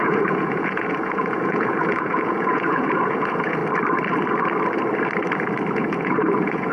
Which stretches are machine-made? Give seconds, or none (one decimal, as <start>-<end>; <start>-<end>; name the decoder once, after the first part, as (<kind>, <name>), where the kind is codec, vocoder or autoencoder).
0.0-3.6 (vocoder, Vocos); 5.7-6.7